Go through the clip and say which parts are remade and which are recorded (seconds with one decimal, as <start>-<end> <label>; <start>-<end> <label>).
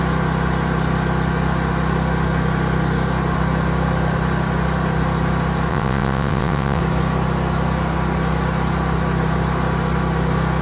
0.0-5.7 recorded; 5.7-6.8 remade; 6.8-10.6 recorded